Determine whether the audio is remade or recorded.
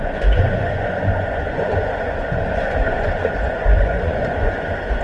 remade